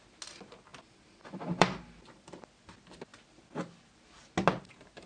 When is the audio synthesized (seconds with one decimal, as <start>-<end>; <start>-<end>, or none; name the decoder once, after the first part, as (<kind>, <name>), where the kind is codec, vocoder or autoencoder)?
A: 0.7-2.4 (vocoder, BigVGAN v2)

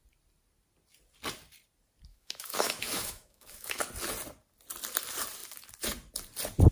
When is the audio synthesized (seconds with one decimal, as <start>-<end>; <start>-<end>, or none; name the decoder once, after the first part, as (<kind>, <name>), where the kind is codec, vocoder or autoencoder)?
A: 2.1-3.8 (autoencoder, DAC-VAE)

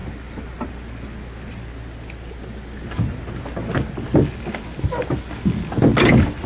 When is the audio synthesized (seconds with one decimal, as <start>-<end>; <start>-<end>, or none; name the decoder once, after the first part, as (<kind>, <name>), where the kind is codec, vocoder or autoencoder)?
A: none

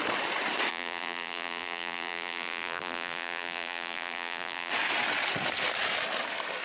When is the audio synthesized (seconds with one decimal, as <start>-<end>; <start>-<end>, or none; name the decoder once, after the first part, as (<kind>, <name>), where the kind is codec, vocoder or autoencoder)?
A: 0.7-4.7 (vocoder, BigVGAN v2)